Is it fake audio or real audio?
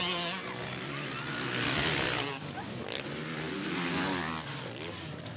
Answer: real